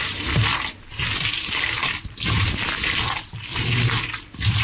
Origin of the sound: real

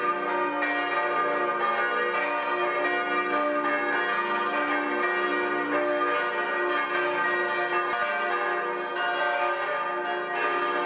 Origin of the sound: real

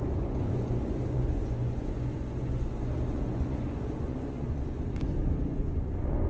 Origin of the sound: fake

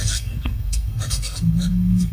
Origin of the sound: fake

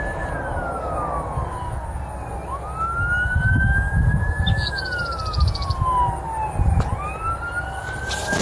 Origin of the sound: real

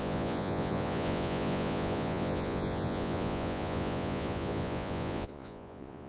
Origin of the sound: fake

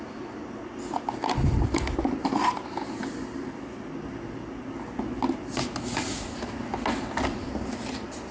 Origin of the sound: real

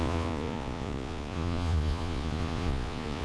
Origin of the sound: fake